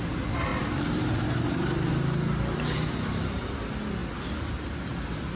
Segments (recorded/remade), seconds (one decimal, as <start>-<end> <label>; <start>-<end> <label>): 0.0-0.5 recorded; 0.5-1.9 remade; 1.9-5.4 recorded